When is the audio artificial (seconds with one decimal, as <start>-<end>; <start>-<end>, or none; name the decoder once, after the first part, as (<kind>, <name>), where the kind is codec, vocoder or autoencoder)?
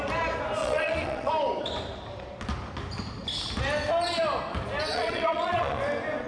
0.6-1.3 (vocoder, Vocos); 4.9-5.8